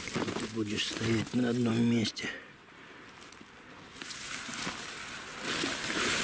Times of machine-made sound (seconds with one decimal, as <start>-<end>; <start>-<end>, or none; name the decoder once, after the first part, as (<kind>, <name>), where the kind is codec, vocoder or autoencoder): none